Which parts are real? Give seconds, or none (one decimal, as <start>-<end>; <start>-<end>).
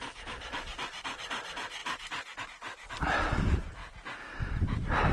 0.0-5.1